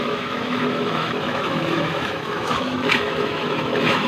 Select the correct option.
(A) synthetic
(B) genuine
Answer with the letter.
A